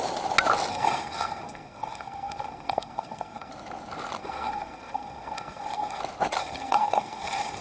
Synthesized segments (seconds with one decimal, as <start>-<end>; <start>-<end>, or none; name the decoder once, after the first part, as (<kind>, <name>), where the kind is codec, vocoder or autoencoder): 0.7-3.5 (codec, SNAC); 4.2-6.0; 6.4-7.6